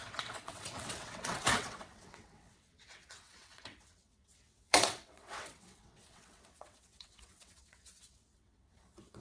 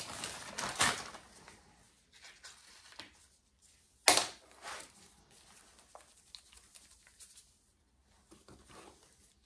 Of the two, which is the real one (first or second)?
second